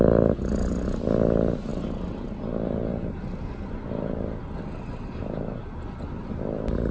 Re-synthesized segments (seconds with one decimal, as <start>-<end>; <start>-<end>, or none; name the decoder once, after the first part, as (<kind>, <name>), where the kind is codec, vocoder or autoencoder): none